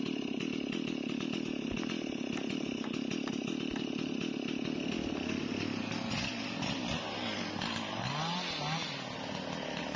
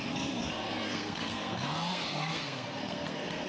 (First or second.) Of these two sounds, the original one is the first